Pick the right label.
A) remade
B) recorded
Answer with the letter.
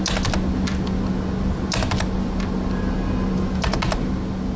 B